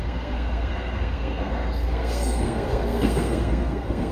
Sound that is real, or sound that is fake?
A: fake